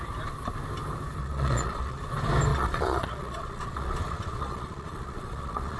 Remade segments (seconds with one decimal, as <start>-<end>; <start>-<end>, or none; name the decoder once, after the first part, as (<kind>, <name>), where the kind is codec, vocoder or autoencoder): 1.2-2.0 (vocoder, Vocos); 2.5-5.8